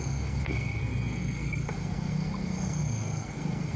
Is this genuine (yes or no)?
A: no